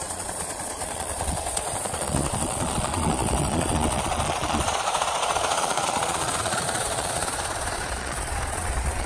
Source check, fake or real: fake